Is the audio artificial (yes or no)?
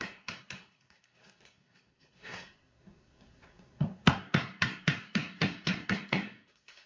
yes